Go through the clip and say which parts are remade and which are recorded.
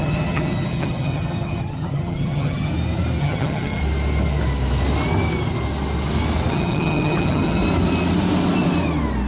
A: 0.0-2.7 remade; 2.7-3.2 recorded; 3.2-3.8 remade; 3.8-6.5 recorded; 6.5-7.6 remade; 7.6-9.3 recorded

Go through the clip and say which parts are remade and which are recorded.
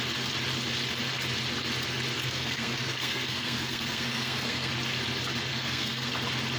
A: 0.0-2.2 recorded; 2.2-4.7 remade; 4.7-5.5 recorded; 5.5-6.1 remade; 6.1-6.6 recorded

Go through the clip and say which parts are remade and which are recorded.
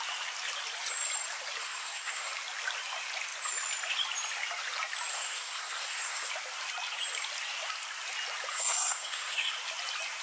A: 0.0-1.6 recorded; 1.6-2.3 remade; 2.3-5.1 recorded; 5.1-6.3 remade; 6.3-8.5 recorded; 8.5-9.5 remade; 9.5-10.2 recorded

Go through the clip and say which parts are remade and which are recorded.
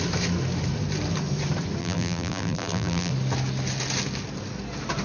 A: 0.0-1.8 recorded; 1.8-3.1 remade; 3.1-5.0 recorded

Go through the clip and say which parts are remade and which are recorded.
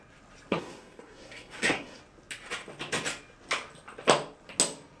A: 0.0-0.5 recorded; 0.5-2.0 remade; 2.0-5.0 recorded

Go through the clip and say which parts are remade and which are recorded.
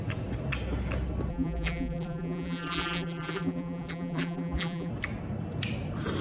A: 0.0-1.3 recorded; 1.3-4.9 remade; 4.9-6.2 recorded